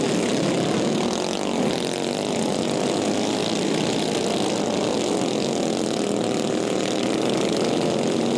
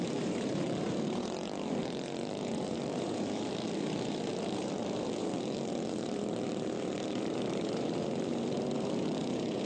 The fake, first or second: second